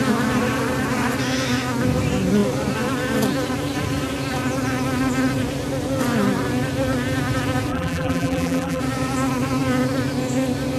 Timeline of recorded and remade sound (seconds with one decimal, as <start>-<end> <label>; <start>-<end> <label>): 0.0-7.7 recorded; 7.7-8.8 remade; 8.8-10.8 recorded